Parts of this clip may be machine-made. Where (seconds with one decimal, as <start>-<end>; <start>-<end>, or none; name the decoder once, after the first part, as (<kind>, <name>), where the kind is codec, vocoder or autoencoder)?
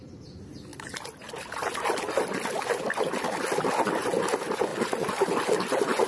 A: 0.7-3.1 (vocoder, BigVGAN v2); 4.7-5.5